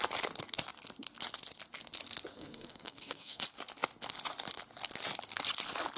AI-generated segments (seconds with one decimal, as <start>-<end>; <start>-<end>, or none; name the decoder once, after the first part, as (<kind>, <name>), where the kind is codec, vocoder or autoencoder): 2.3-3.4 (codec, SNAC)